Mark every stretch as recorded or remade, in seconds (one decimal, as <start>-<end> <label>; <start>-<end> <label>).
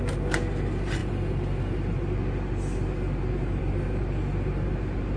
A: 0.0-5.2 recorded